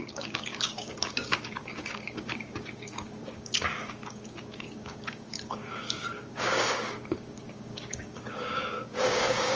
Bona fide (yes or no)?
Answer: no